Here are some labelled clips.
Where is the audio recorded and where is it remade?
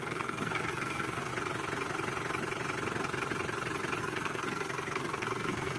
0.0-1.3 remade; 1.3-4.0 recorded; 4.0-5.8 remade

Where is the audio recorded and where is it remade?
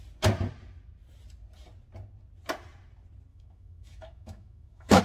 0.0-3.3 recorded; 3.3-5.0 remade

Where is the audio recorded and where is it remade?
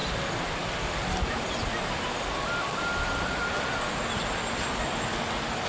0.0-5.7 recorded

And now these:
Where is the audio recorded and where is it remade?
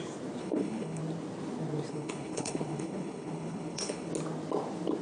0.0-0.4 recorded; 0.4-1.0 remade; 1.0-1.9 recorded; 1.9-4.1 remade; 4.1-5.0 recorded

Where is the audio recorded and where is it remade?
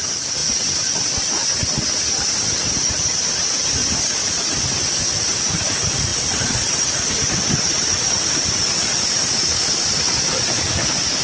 0.0-0.4 remade; 0.4-2.8 recorded; 2.8-11.2 remade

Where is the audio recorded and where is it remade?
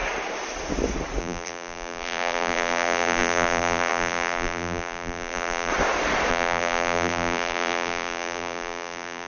0.0-1.2 recorded; 1.2-5.7 remade; 5.7-6.3 recorded; 6.3-9.3 remade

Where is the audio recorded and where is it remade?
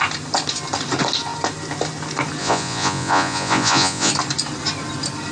0.0-2.4 recorded; 2.4-4.1 remade; 4.1-5.3 recorded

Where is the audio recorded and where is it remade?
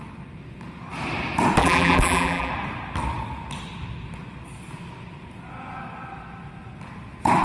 0.0-1.6 recorded; 1.6-2.5 remade; 2.5-7.4 recorded